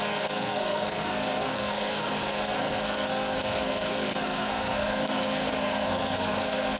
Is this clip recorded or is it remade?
remade